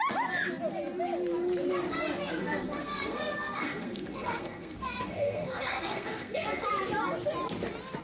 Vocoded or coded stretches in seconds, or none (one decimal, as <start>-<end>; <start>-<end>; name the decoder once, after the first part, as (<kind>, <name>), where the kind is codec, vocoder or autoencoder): 2.4-6.7 (codec, SNAC)